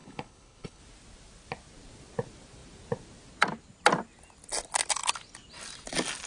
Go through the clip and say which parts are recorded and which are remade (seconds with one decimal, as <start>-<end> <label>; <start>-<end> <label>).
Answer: 0.0-0.8 remade; 0.8-6.3 recorded